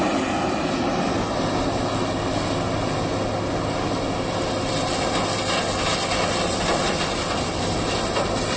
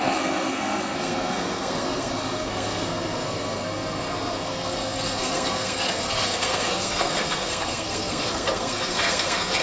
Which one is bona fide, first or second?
first